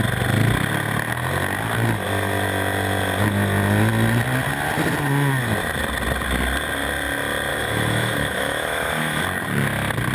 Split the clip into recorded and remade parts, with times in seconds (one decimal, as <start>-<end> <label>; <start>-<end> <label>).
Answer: 0.0-7.5 recorded; 7.5-9.2 remade; 9.2-10.1 recorded